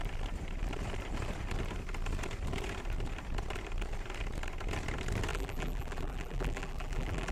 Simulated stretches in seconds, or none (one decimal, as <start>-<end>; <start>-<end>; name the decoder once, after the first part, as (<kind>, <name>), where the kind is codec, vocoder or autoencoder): 5.3-7.3 (vocoder, BigVGAN v2)